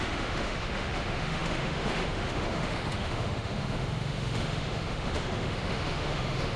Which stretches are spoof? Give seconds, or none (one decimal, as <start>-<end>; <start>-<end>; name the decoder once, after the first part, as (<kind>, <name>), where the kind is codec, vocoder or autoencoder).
0.0-6.6 (autoencoder, DAC-VAE)